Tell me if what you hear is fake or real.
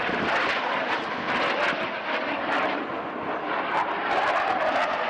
real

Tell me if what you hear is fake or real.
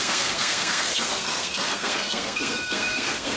fake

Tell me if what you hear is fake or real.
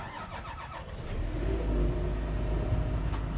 real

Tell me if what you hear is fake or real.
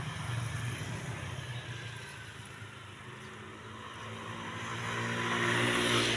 real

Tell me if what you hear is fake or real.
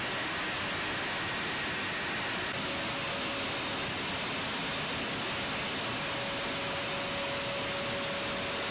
real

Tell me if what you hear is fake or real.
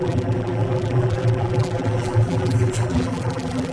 fake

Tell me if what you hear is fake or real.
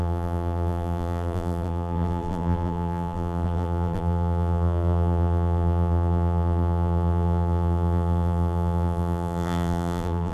fake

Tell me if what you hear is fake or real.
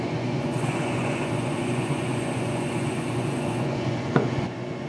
fake